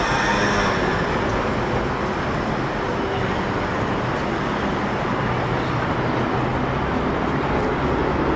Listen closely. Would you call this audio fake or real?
real